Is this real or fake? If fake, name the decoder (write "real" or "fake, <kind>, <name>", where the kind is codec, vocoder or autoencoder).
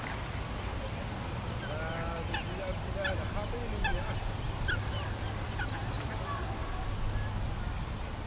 real